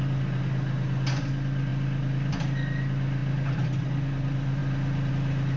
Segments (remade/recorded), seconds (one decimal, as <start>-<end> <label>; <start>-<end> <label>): 0.0-5.6 recorded